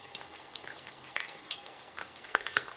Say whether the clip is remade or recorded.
remade